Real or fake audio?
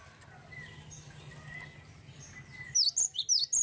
real